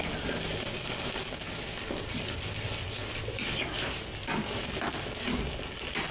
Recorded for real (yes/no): yes